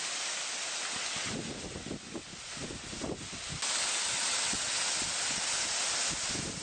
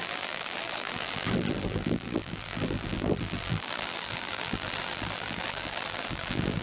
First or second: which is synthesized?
second